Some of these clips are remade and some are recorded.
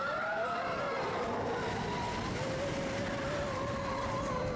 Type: recorded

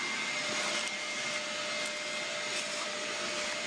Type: recorded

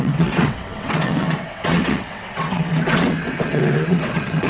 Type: remade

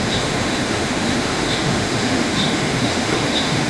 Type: remade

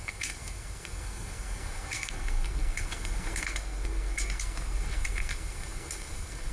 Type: remade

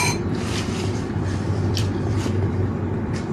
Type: remade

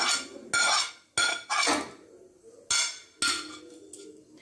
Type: recorded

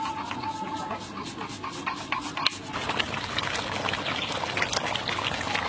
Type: recorded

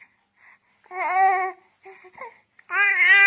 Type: recorded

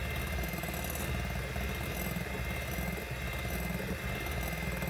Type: recorded